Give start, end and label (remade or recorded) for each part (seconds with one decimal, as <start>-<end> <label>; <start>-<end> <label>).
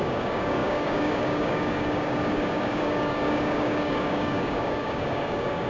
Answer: 0.0-5.7 remade